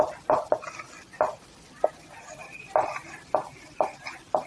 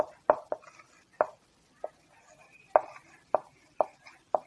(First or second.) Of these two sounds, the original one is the second